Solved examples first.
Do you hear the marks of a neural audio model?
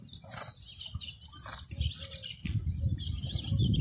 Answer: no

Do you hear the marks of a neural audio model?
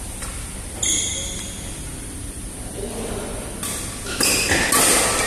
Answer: no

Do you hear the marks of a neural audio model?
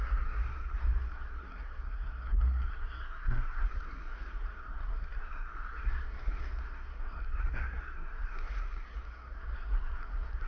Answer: yes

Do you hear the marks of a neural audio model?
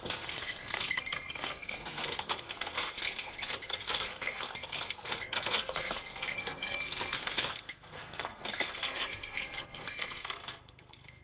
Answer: yes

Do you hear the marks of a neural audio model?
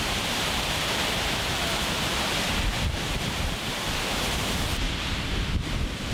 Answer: yes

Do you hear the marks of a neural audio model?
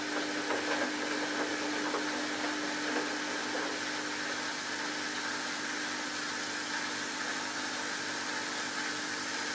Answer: no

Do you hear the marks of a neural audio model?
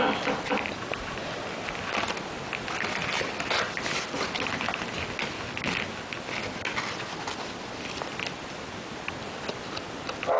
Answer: no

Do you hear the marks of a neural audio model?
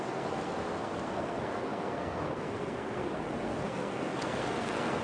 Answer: yes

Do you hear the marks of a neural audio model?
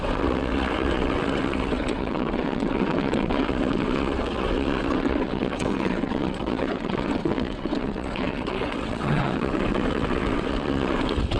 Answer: yes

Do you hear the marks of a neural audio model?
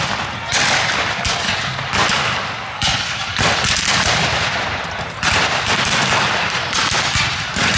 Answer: no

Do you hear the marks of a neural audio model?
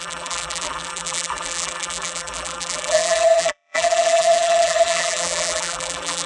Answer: yes